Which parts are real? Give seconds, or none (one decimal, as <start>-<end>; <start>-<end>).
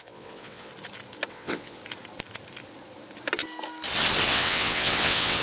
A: 0.7-1.3; 1.8-4.3